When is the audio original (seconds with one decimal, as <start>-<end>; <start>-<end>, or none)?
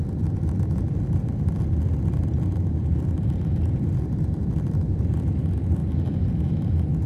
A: 5.8-6.5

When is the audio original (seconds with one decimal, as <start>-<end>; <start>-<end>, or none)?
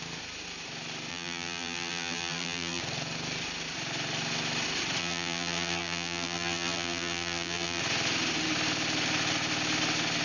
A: 0.0-1.1; 2.8-5.0; 7.8-10.2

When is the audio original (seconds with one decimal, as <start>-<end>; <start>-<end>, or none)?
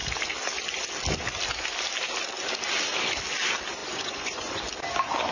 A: 0.0-3.8; 4.6-5.3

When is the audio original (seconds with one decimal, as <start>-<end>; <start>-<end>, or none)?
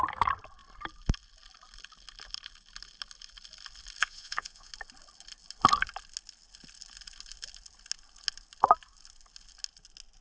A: 0.0-4.0; 4.7-10.2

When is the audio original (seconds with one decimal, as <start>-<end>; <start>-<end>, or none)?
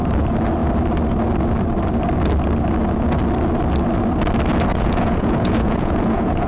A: 0.0-4.7